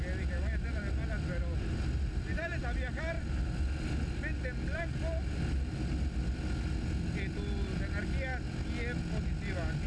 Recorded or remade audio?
recorded